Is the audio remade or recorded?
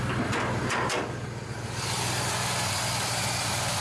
recorded